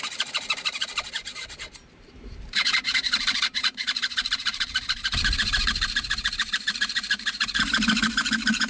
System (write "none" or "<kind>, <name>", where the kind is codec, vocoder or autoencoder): vocoder, BigVGAN v2